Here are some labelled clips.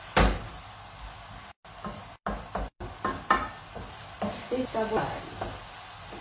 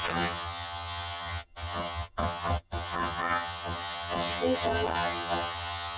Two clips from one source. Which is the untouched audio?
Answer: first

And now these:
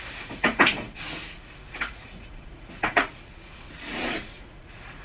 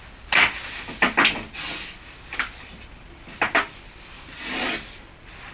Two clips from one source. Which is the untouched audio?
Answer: second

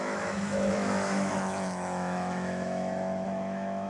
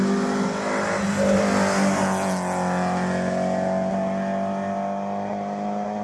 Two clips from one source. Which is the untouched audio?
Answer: second